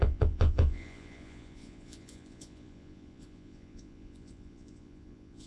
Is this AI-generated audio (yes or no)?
yes